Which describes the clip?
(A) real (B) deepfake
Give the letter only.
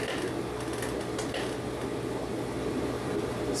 A